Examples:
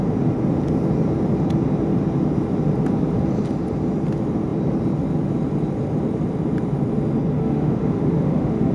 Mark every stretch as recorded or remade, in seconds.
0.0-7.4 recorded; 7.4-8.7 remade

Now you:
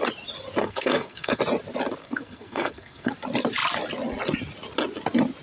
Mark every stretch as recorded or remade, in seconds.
0.0-0.6 recorded; 0.6-1.4 remade; 1.4-2.0 recorded; 2.0-3.1 remade; 3.1-5.4 recorded

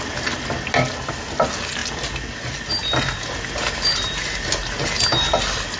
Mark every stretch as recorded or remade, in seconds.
0.0-5.8 recorded

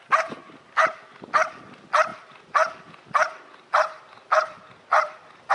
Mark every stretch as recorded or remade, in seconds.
0.0-2.1 recorded; 2.1-5.5 remade

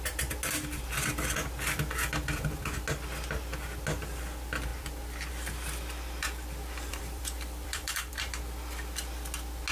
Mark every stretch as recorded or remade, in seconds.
0.0-6.9 recorded; 6.9-8.1 remade; 8.1-9.7 recorded

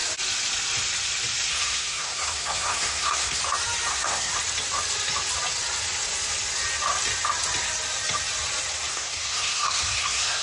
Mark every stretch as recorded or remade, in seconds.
0.0-1.5 recorded; 1.5-3.4 remade; 3.4-3.9 recorded; 3.9-4.3 remade; 4.3-8.9 recorded; 8.9-10.4 remade

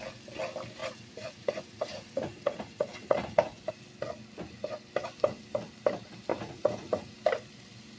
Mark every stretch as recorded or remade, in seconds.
0.0-0.8 recorded; 0.8-3.7 remade; 3.7-6.3 recorded; 6.3-7.1 remade; 7.1-8.0 recorded